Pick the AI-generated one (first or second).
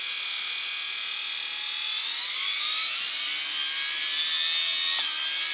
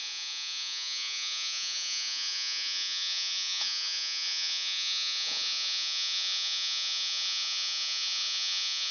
second